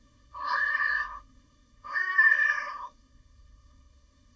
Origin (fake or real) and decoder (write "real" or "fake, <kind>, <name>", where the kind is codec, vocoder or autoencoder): fake, codec, SNAC